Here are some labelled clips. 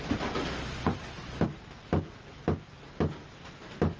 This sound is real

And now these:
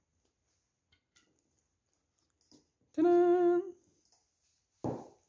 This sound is real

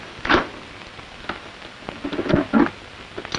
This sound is real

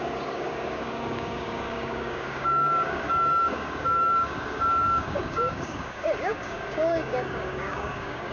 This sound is fake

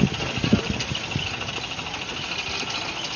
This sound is real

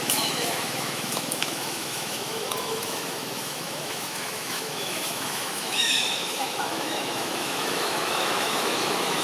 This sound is fake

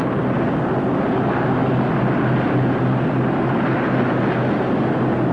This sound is real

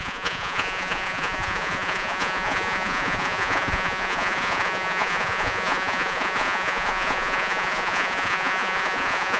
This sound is fake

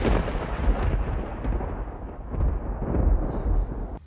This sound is real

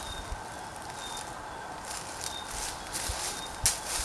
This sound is real